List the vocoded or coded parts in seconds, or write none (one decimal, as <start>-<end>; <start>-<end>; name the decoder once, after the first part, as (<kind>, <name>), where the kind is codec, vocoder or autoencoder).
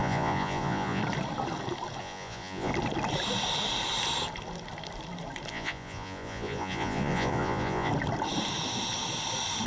0.0-1.0 (vocoder, Vocos); 2.0-2.7; 5.5-7.9